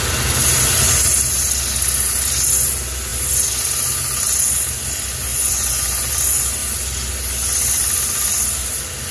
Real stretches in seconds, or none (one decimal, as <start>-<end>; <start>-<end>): 0.0-5.3; 6.1-9.1